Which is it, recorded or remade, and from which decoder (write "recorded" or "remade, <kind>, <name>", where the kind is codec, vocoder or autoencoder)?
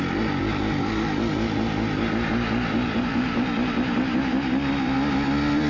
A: recorded